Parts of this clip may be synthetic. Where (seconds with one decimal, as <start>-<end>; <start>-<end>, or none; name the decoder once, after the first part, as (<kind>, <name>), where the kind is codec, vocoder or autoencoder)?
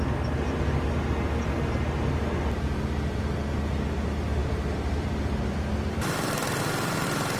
4.4-6.6 (vocoder, BigVGAN v2)